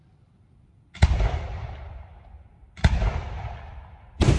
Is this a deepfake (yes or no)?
no